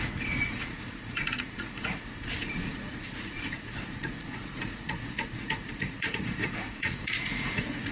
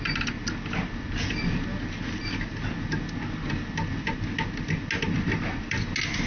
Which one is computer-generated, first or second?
first